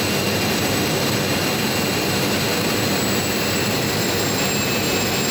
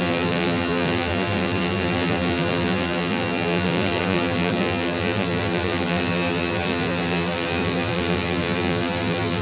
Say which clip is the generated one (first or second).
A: second